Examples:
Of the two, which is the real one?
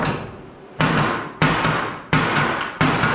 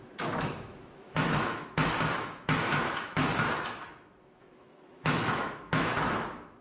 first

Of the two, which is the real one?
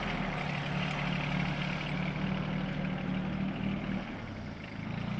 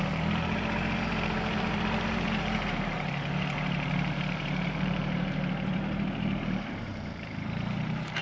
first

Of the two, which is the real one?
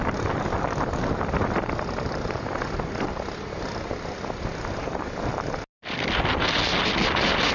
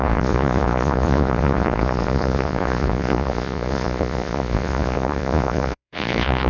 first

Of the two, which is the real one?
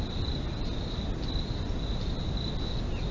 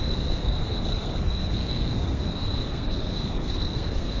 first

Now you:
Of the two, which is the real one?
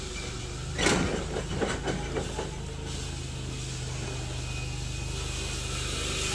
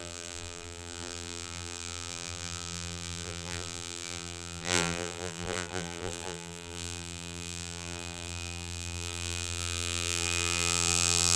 first